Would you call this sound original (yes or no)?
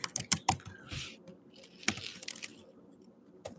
no